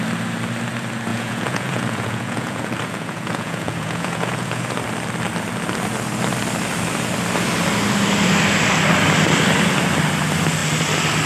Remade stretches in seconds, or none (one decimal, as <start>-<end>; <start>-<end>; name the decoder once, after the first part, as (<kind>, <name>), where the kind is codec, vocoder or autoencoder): 1.1-4.6 (vocoder, Vocos)